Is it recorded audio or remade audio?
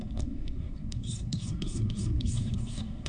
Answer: remade